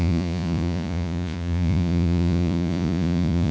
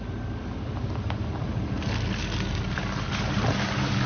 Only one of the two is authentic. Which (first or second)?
second